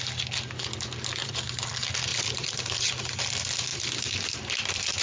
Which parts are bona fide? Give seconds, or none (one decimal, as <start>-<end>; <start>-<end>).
0.0-1.1; 1.7-2.1; 3.2-3.7